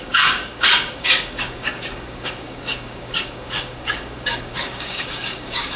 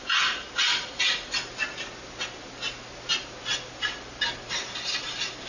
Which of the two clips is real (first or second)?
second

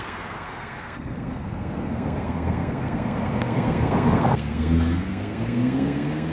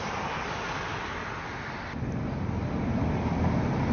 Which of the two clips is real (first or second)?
second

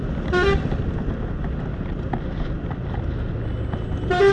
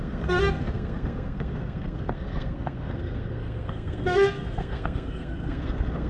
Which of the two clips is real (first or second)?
first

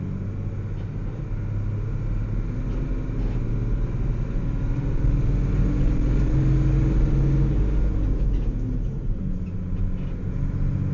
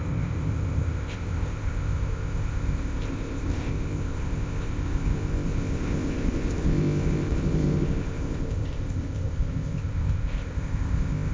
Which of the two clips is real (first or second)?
first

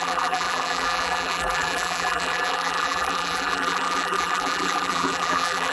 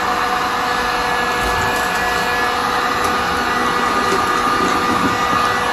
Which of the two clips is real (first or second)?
second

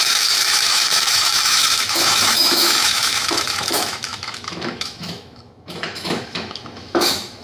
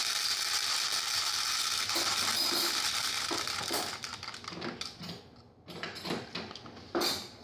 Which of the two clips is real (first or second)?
second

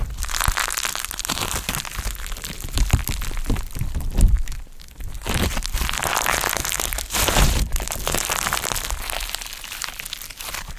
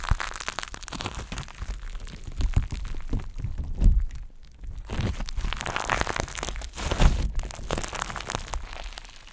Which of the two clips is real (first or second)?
second